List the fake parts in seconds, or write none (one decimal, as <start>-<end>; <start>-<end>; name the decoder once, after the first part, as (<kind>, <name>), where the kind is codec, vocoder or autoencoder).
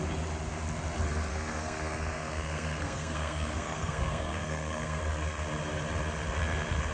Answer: 1.3-5.0 (codec, SNAC)